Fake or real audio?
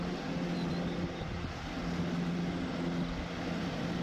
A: real